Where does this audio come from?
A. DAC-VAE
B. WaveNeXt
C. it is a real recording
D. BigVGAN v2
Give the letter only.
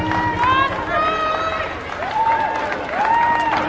C